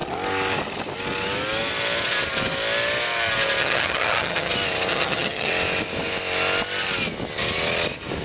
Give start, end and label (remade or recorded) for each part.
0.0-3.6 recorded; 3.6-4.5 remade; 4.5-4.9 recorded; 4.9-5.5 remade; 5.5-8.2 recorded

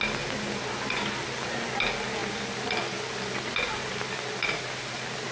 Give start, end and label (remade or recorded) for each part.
0.0-5.3 recorded

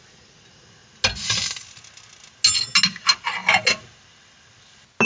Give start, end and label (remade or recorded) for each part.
0.0-5.0 recorded

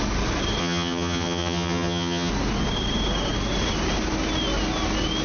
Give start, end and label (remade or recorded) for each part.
0.0-0.6 recorded; 0.6-2.3 remade; 2.3-5.2 recorded

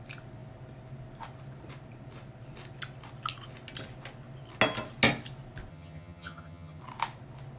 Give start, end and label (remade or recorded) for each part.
0.0-5.7 recorded; 5.7-6.8 remade; 6.8-7.6 recorded

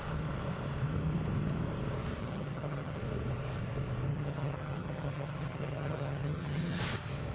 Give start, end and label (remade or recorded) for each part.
0.0-2.2 recorded; 2.2-3.0 remade; 3.0-4.1 recorded; 4.1-6.8 remade; 6.8-7.3 recorded